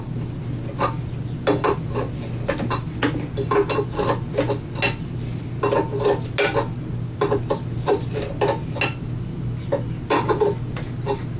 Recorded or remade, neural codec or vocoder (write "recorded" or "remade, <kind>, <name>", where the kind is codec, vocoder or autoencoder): recorded